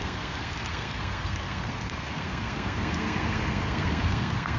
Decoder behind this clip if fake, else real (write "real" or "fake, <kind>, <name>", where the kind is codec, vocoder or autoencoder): fake, codec, SNAC